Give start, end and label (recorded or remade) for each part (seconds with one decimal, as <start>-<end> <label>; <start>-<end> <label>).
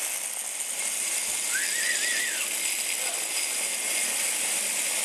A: 0.0-5.0 recorded